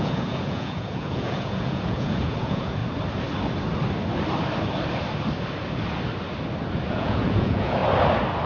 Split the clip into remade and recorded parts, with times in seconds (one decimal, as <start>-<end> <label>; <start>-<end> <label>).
0.0-2.8 remade; 2.8-6.9 recorded; 6.9-7.8 remade; 7.8-8.5 recorded